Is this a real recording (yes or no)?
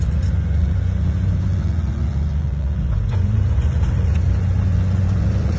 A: no